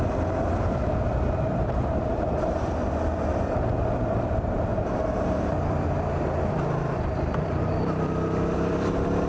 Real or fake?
fake